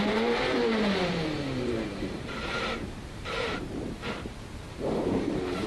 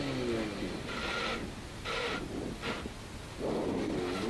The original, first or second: second